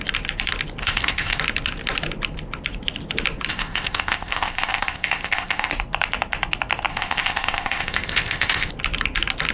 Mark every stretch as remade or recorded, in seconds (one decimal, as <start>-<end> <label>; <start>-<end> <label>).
0.0-0.8 recorded; 0.8-1.4 remade; 1.4-3.5 recorded; 3.5-5.7 remade; 5.7-6.9 recorded; 6.9-8.7 remade; 8.7-9.5 recorded